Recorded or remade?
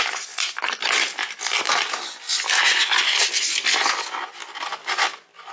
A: recorded